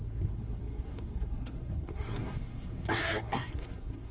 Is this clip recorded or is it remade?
remade